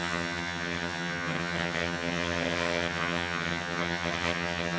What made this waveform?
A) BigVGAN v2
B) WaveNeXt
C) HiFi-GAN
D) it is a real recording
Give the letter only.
C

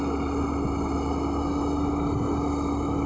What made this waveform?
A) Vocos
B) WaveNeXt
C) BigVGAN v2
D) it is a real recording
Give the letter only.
D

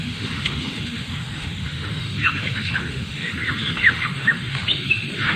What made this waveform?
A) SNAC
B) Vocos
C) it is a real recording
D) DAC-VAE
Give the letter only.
D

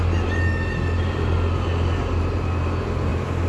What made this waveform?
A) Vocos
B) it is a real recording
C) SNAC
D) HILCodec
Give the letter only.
B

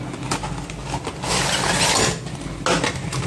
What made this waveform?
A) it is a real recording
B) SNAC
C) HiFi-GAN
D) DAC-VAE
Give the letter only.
A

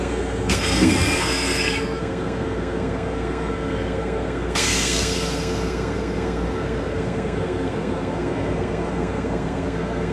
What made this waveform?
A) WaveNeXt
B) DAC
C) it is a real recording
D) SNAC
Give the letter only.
D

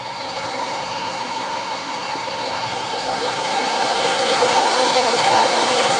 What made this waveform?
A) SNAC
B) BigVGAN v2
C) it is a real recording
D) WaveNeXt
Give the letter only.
A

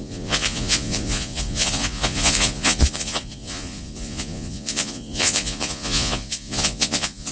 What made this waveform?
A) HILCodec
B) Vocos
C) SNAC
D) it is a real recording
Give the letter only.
B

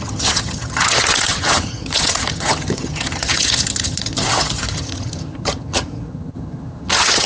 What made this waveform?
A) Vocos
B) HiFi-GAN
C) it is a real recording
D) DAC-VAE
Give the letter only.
B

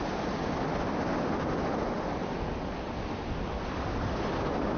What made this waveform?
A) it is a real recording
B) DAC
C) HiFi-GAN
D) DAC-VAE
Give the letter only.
A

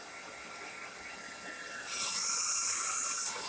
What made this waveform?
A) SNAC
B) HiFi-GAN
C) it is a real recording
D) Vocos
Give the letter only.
C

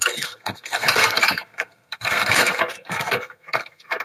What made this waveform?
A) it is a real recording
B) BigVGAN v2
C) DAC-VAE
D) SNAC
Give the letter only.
D